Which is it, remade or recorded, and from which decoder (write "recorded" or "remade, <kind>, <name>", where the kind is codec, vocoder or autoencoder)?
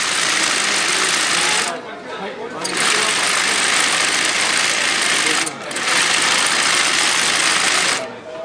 recorded